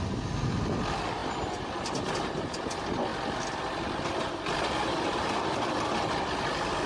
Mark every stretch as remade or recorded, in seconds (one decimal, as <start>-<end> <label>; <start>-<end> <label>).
0.0-6.9 recorded